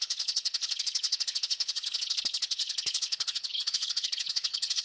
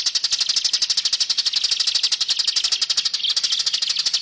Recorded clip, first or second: second